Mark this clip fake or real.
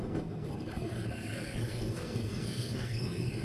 fake